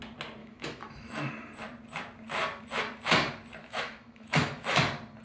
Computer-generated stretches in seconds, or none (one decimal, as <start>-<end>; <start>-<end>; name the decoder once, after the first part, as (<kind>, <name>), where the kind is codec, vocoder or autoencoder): 0.4-1.3 (autoencoder, DAC-VAE); 3.6-4.8